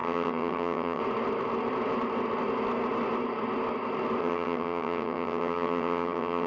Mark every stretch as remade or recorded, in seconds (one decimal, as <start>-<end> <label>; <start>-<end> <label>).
0.0-1.0 remade; 1.0-4.2 recorded; 4.2-6.5 remade